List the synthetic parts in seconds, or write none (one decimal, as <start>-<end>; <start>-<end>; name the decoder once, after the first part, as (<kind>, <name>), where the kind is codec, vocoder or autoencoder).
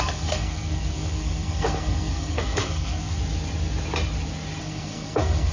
0.0-3.2 (codec, SNAC); 4.6-5.5